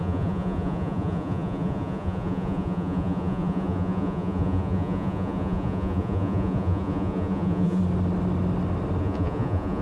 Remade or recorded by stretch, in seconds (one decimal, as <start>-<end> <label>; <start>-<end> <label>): 0.0-7.8 remade; 7.8-9.0 recorded; 9.0-9.8 remade